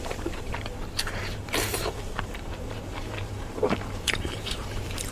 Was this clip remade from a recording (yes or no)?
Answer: yes